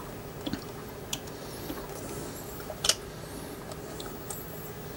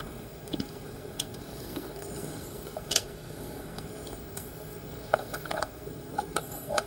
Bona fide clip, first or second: first